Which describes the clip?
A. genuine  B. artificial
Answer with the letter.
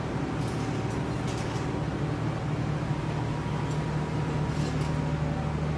A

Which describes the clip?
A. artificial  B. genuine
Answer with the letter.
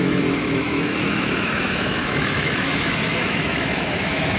A